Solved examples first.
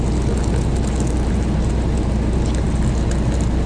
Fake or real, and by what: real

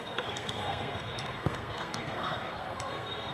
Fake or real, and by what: fake, codec, SNAC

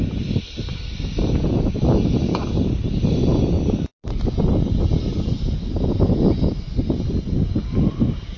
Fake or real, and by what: real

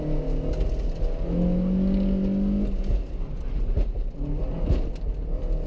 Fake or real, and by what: real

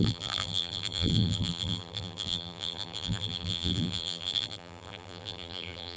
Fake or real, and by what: fake, vocoder, BigVGAN v2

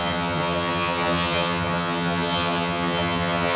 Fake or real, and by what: fake, vocoder, HiFi-GAN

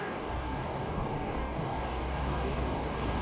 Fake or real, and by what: fake, codec, DAC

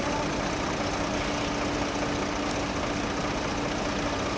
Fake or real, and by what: real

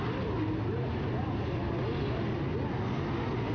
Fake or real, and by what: real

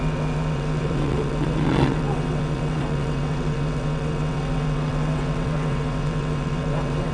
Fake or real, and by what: fake, vocoder, WaveNeXt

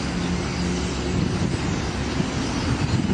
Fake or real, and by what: real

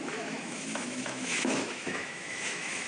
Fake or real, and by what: fake, autoencoder, DAC-VAE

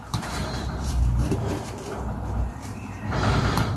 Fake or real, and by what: fake, vocoder, BigVGAN v2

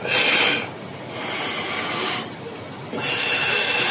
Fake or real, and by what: real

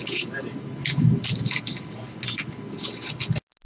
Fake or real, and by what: real